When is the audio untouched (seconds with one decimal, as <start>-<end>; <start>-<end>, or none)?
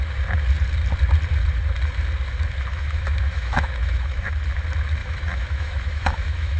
0.0-2.7; 4.3-5.0